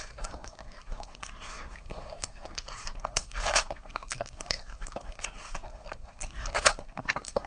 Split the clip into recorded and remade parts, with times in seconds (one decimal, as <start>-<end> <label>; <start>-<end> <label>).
0.0-7.5 remade